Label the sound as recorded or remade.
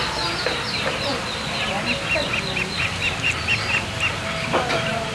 recorded